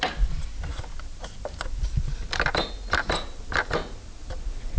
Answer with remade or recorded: recorded